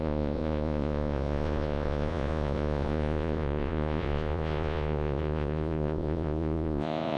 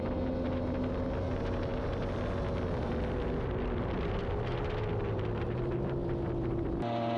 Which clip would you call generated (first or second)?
first